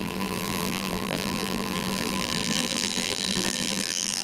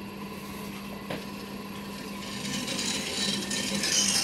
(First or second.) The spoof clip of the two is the first